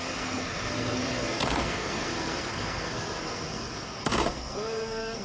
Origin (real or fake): fake